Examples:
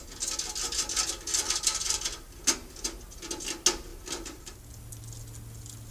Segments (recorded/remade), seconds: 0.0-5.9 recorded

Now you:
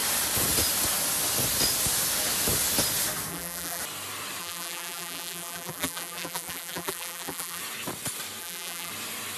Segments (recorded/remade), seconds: 0.0-3.3 recorded; 3.3-3.8 remade; 3.8-4.4 recorded; 4.4-7.6 remade; 7.6-8.4 recorded; 8.4-8.9 remade; 8.9-9.4 recorded

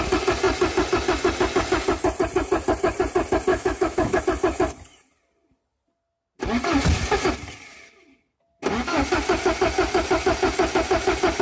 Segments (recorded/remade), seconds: 0.0-3.5 recorded; 3.5-4.2 remade; 4.2-11.4 recorded

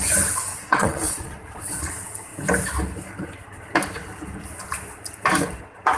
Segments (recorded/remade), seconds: 0.0-0.5 recorded; 0.5-1.9 remade; 1.9-6.0 recorded

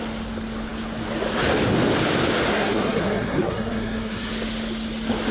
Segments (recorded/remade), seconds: 0.0-2.5 recorded; 2.5-4.3 remade; 4.3-5.3 recorded

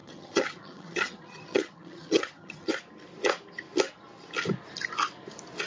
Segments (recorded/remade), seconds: 0.0-2.7 remade; 2.7-5.7 recorded